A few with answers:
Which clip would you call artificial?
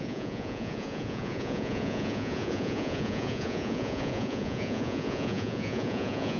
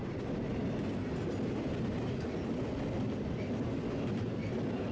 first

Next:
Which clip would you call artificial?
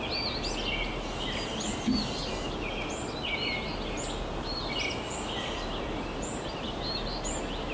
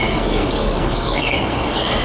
second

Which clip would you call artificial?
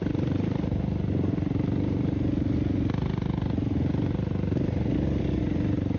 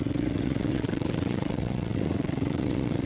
second